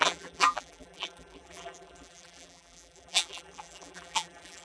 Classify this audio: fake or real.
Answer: fake